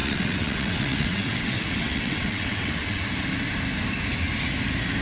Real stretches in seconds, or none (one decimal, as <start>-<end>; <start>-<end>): 3.0-5.0